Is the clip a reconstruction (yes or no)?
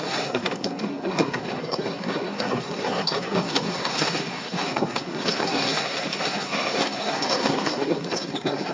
yes